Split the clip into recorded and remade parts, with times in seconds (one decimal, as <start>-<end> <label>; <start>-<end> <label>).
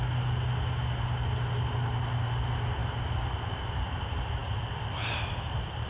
0.0-5.9 recorded